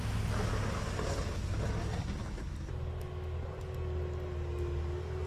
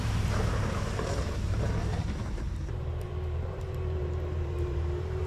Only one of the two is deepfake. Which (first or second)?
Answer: second